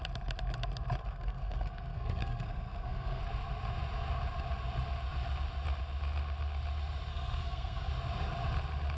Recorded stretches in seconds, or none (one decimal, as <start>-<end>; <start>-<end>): 0.0-1.0; 3.2-7.1; 7.9-9.0